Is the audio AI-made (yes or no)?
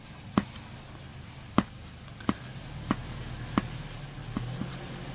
no